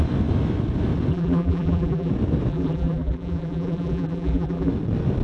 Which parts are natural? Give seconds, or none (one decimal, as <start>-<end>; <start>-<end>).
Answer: 0.0-1.1; 2.1-2.5; 4.7-5.2